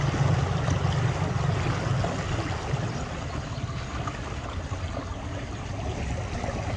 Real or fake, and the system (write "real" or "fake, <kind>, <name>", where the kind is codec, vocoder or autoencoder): real